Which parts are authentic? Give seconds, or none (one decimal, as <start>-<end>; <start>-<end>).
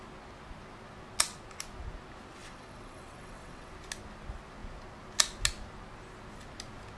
0.0-2.4; 3.7-7.0